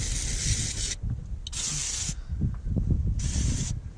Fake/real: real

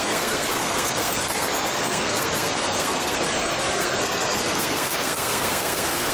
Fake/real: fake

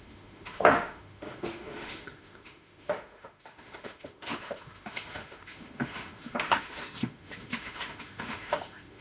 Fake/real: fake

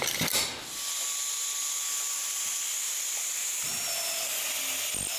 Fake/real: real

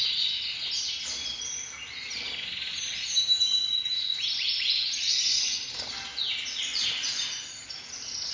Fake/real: real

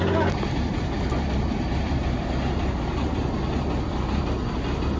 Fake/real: real